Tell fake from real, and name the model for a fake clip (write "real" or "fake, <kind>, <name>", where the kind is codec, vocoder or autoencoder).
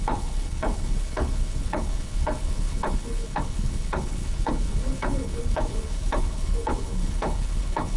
fake, codec, HILCodec